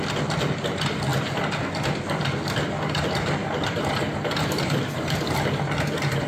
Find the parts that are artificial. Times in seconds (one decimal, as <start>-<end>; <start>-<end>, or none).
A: 3.4-5.2